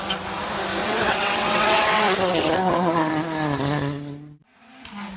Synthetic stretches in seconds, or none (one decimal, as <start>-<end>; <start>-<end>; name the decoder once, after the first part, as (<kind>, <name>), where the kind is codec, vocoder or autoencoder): 0.8-3.1 (vocoder, WaveNeXt)